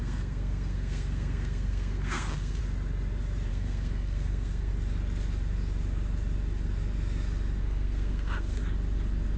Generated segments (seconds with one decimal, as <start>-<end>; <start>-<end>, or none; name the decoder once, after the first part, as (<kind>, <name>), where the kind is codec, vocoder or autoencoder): 0.0-2.6 (codec, SNAC); 3.5-4.7; 7.6-8.6